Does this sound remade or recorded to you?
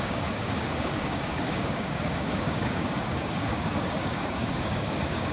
remade